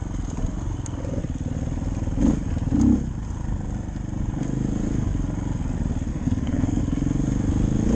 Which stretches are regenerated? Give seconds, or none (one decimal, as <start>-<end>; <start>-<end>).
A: 6.1-6.8